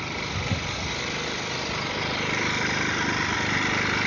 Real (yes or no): yes